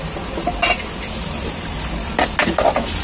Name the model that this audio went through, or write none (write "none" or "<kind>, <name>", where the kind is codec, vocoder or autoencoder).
none